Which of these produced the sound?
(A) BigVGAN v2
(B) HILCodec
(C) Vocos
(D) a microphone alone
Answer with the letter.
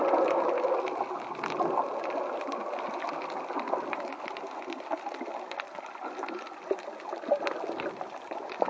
D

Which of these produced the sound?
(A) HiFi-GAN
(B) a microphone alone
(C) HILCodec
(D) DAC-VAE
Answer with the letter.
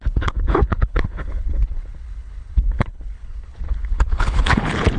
C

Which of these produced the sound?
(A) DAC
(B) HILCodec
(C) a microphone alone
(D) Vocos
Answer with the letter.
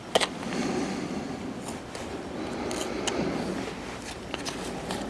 C